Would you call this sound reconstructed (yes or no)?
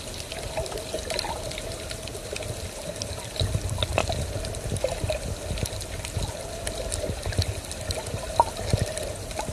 no